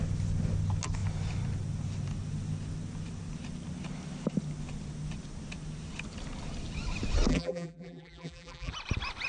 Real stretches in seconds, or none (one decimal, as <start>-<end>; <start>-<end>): 0.0-7.3; 8.7-9.3

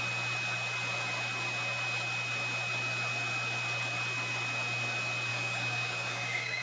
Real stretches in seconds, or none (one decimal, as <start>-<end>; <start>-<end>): 0.0-5.3

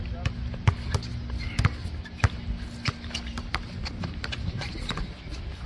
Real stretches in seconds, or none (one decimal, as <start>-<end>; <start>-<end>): 0.0-5.7

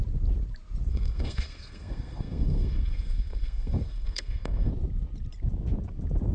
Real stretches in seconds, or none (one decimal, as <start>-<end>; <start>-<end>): 0.0-0.9; 4.7-6.3

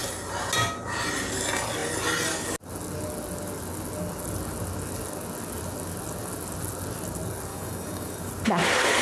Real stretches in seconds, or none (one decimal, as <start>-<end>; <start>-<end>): 0.0-7.5; 8.3-9.0

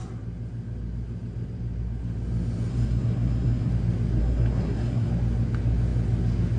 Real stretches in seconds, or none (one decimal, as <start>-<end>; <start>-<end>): 0.0-2.7; 3.7-4.2; 5.1-6.6

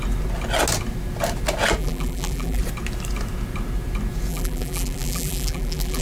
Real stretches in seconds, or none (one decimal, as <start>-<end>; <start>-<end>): 0.0-1.8; 2.6-4.3